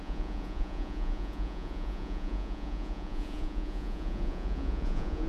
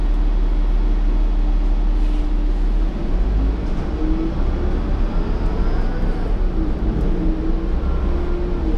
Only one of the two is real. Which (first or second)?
second